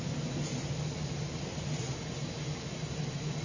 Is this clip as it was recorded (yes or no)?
yes